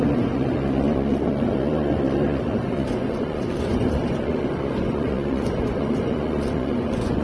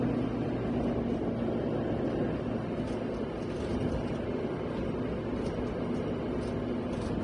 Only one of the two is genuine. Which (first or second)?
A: second